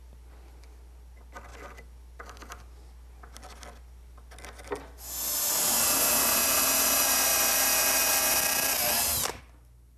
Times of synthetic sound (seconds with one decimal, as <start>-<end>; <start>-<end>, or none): none

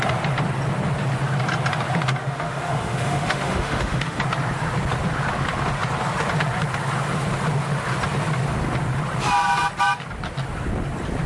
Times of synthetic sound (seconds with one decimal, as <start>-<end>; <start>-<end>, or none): 2.2-4.2

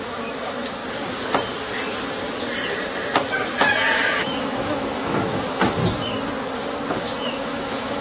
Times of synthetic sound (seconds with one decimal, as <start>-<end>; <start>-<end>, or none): 0.0-0.8; 4.2-5.8; 6.9-8.0

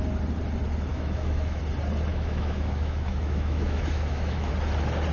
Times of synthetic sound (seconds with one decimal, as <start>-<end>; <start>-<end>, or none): 0.9-1.6; 2.1-4.5